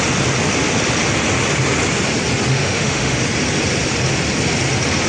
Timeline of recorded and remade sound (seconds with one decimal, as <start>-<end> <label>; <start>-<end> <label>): 0.0-2.5 recorded; 2.5-3.2 remade; 3.2-5.1 recorded